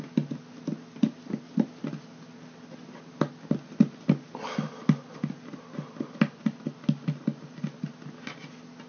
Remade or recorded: recorded